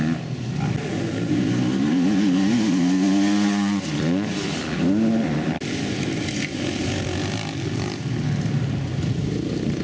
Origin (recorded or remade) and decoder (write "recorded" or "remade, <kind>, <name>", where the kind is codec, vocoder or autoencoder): recorded